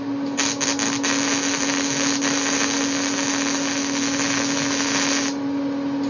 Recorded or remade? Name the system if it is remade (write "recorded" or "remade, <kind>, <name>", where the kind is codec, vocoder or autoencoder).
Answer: recorded